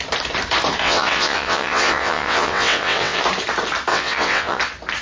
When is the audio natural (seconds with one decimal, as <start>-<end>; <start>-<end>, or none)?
0.0-0.8; 3.2-3.9; 4.6-5.0